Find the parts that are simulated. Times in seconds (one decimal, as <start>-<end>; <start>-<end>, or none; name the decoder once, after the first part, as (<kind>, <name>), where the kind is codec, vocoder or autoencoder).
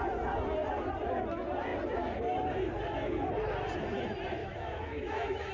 4.4-5.5 (autoencoder, DAC-VAE)